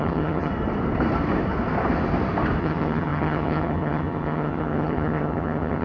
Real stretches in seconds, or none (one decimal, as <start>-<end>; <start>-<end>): 0.5-2.6

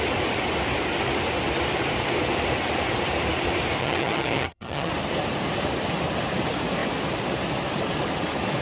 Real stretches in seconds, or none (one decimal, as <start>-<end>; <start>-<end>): 0.0-3.8; 4.9-8.6

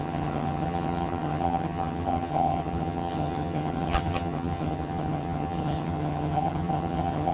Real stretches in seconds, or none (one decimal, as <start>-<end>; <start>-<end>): none

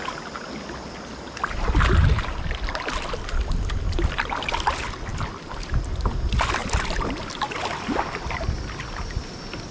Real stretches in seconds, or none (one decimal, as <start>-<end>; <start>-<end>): 0.0-9.7